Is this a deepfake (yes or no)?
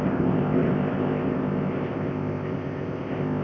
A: yes